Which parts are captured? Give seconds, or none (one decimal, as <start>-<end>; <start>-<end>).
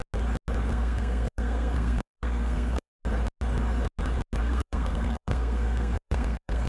0.0-0.7; 2.9-4.4